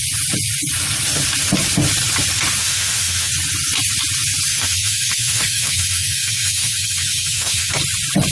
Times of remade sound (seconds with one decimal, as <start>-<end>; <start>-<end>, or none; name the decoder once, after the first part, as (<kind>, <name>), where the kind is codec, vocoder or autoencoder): 2.6-3.3 (autoencoder, DAC-VAE); 4.5-7.7